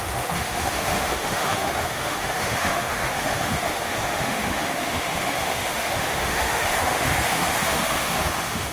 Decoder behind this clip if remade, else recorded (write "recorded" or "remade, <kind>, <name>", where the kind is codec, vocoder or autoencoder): remade, autoencoder, DAC-VAE